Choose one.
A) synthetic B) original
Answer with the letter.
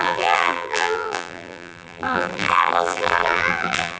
A